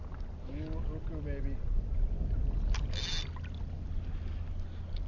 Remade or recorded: recorded